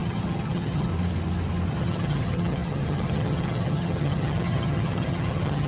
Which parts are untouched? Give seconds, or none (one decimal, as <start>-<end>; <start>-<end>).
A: 0.9-1.7